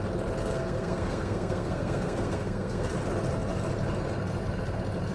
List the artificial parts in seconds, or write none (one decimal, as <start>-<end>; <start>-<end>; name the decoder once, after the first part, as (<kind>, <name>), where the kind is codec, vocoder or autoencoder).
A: 0.4-2.9 (codec, SNAC)